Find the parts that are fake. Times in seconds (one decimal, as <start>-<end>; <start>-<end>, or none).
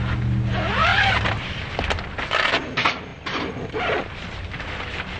0.9-1.7; 3.1-4.6